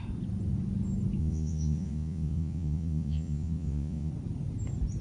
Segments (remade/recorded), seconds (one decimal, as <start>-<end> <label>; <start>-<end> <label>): 0.0-1.2 recorded; 1.2-4.1 remade; 4.1-5.0 recorded